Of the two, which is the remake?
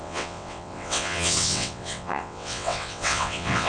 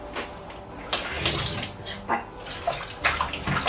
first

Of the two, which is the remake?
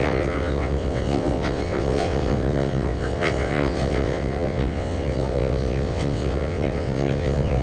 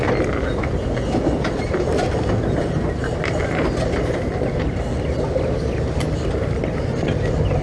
first